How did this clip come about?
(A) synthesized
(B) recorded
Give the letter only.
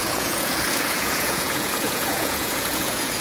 A